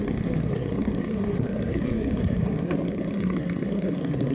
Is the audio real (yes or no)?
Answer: no